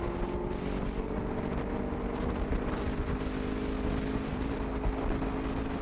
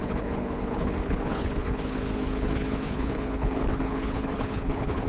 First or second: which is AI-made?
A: second